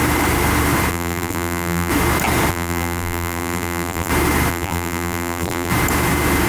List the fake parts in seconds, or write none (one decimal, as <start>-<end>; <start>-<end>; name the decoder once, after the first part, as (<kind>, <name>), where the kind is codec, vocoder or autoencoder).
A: 0.9-1.9 (vocoder, BigVGAN v2); 2.5-4.1; 4.5-5.7